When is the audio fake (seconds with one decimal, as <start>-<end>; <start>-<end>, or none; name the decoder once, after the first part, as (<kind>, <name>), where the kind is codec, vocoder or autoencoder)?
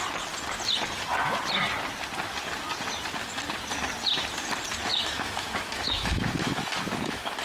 4.9-7.4 (autoencoder, DAC-VAE)